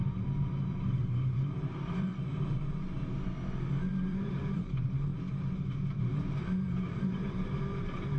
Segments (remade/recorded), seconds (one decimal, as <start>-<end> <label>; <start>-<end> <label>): 0.0-0.6 recorded; 0.6-2.1 remade; 2.1-3.9 recorded; 3.9-5.1 remade; 5.1-6.0 recorded; 6.0-8.2 remade